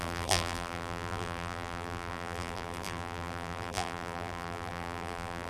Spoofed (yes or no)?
yes